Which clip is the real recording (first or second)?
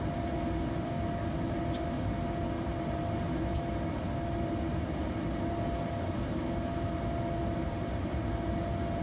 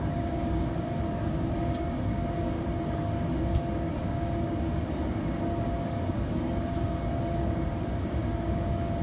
first